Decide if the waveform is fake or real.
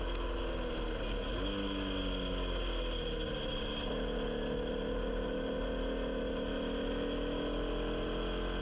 real